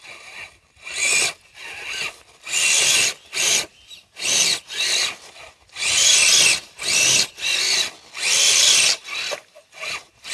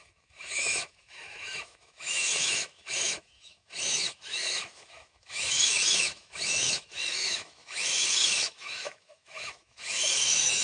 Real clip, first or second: first